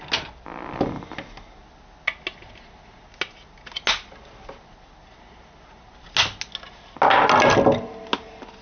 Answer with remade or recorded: recorded